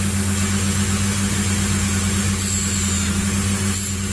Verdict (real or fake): real